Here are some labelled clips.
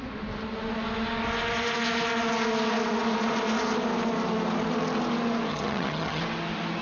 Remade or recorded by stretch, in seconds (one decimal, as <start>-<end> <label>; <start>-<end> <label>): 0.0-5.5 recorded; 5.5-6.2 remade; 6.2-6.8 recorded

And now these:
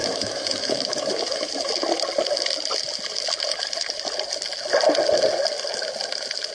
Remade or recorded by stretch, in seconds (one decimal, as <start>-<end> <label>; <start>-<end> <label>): 0.0-1.7 remade; 1.7-6.5 recorded

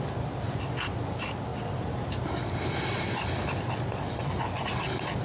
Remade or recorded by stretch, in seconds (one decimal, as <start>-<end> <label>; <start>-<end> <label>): 0.0-5.2 recorded